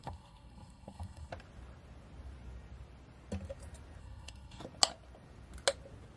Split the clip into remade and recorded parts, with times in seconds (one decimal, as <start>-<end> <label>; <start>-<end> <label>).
0.0-1.3 remade; 1.3-4.0 recorded; 4.0-4.6 remade; 4.6-6.2 recorded

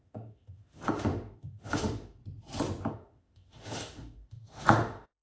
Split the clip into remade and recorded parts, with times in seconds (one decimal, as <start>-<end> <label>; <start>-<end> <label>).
0.0-2.2 remade; 2.2-2.9 recorded; 2.9-5.2 remade

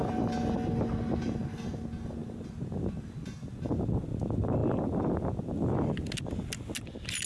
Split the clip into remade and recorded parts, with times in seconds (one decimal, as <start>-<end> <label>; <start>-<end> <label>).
0.0-7.3 recorded

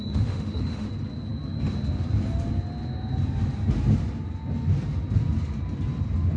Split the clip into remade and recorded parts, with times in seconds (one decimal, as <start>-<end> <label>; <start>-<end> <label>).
0.0-0.9 remade; 0.9-6.4 recorded

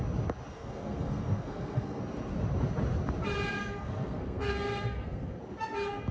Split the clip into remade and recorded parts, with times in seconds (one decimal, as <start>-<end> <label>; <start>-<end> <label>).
0.0-0.5 recorded; 0.5-2.0 remade; 2.0-3.6 recorded; 3.6-5.4 remade; 5.4-6.1 recorded

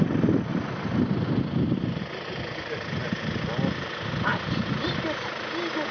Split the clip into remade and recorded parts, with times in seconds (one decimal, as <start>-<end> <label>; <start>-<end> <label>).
0.0-0.5 recorded; 0.5-2.0 remade; 2.0-3.0 recorded; 3.0-3.6 remade; 3.6-4.3 recorded; 4.3-4.9 remade; 4.9-5.9 recorded

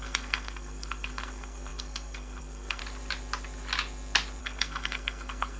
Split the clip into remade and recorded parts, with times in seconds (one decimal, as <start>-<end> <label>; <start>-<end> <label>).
0.0-2.8 remade; 2.8-4.4 recorded; 4.4-5.6 remade

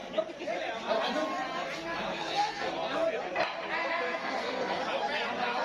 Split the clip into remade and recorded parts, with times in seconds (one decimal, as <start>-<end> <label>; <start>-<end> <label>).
0.0-2.1 recorded; 2.1-2.7 remade; 2.7-4.2 recorded; 4.2-4.8 remade; 4.8-5.6 recorded